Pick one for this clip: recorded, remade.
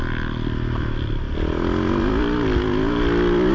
recorded